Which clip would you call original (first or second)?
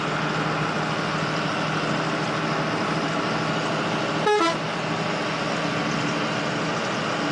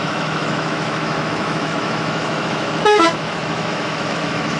first